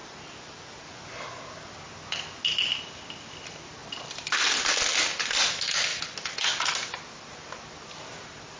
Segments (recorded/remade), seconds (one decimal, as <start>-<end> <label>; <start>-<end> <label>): 0.0-5.9 recorded; 5.9-7.3 remade; 7.3-8.6 recorded